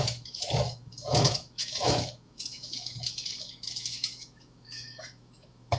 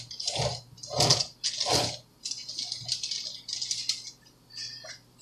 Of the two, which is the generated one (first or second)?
first